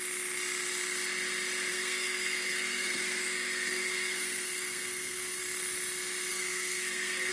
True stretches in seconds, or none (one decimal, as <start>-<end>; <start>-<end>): 0.0-1.7; 5.4-6.3